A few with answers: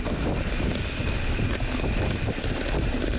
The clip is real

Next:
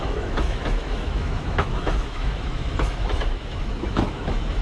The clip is fake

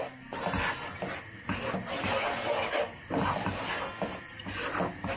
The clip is real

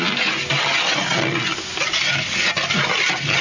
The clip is real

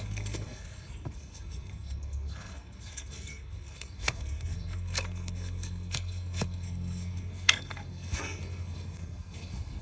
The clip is fake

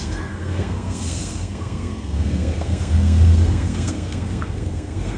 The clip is fake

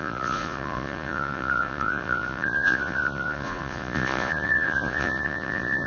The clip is fake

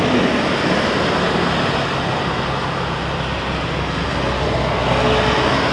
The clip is real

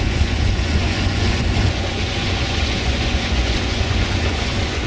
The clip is fake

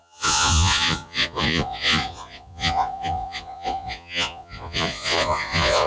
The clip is fake